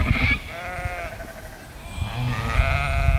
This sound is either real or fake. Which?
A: real